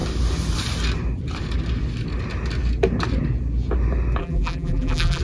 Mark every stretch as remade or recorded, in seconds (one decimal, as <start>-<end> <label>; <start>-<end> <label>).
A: 0.0-4.2 recorded; 4.2-5.2 remade